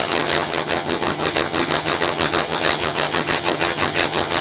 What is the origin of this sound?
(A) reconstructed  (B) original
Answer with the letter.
A